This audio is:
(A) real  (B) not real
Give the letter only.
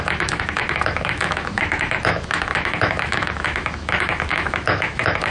B